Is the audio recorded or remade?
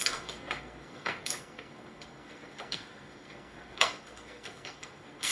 remade